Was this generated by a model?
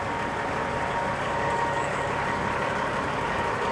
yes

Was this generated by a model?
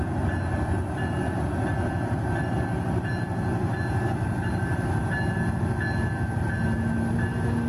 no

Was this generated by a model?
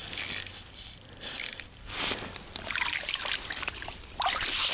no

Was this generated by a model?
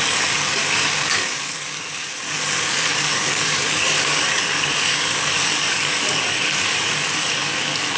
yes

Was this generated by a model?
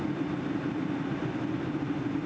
no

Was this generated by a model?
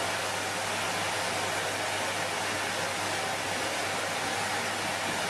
no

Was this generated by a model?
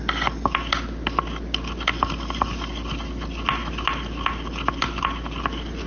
no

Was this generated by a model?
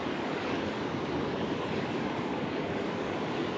yes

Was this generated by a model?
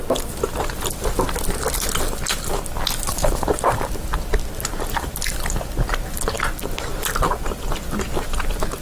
no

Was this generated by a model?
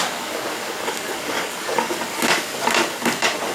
yes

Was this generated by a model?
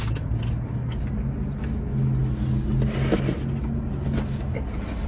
no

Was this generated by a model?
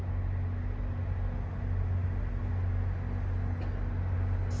no